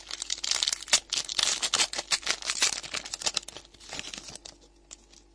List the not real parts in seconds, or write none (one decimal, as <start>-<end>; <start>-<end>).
none